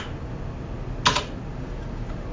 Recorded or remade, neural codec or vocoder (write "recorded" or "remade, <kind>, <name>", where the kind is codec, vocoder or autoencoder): recorded